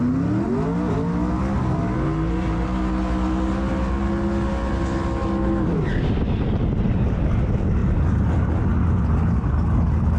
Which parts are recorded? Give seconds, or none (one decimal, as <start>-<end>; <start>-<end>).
0.0-10.2